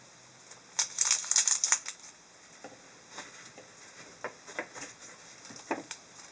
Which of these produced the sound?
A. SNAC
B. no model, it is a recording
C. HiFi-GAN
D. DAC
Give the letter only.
B